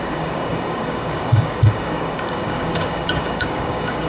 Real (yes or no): no